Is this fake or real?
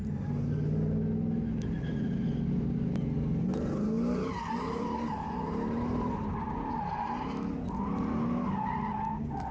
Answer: real